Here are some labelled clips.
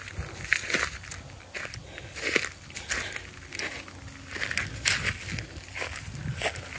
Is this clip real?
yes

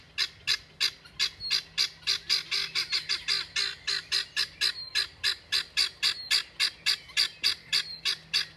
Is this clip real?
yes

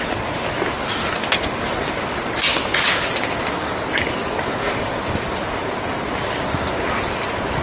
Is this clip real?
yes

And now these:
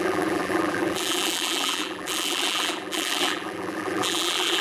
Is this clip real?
no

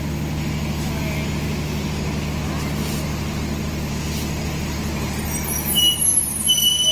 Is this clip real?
yes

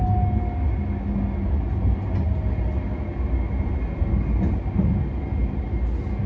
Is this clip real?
yes